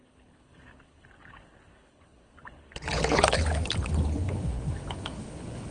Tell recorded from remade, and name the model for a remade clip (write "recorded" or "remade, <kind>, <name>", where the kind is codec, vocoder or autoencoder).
remade, codec, HILCodec